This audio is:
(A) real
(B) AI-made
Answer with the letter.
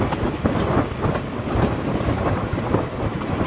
A